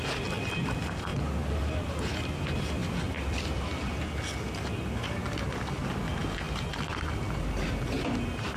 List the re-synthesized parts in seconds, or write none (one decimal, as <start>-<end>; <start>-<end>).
none